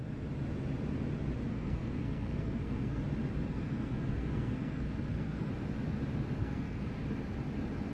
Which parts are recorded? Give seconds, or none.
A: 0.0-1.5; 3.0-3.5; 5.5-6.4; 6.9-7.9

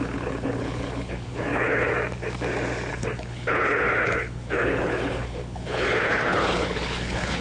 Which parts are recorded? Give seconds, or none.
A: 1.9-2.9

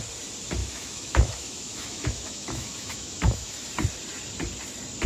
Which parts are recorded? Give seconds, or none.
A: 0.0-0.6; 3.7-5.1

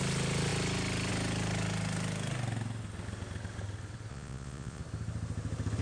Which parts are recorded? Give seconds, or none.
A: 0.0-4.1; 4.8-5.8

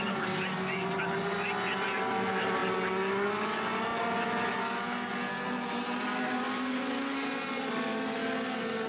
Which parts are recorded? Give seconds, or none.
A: 0.0-8.9

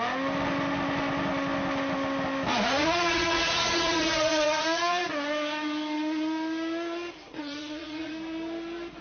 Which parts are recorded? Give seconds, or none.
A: 0.0-2.5; 5.0-7.3; 8.1-9.0

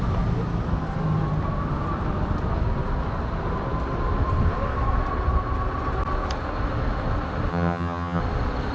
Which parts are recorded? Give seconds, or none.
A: 0.0-7.5; 8.2-8.7

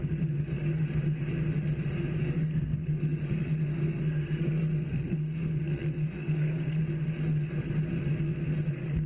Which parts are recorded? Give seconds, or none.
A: 0.0-2.2; 6.8-8.7